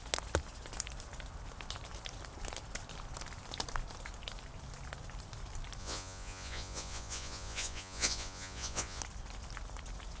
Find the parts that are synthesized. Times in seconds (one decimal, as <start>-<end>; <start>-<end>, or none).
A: 5.8-9.0